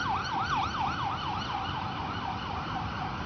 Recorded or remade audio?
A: recorded